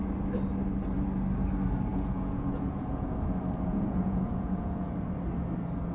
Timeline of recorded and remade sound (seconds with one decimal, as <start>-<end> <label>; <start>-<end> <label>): 0.0-1.9 recorded; 1.9-3.3 remade; 3.3-3.7 recorded; 3.7-4.9 remade; 4.9-5.9 recorded